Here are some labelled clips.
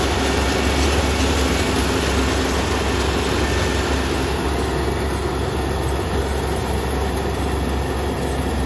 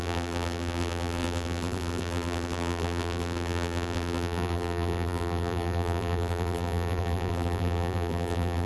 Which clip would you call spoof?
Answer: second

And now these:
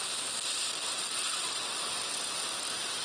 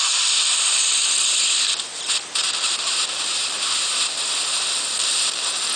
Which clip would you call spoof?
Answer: second